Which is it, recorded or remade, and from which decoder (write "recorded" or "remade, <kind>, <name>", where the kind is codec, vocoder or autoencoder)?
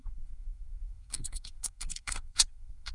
remade, codec, SNAC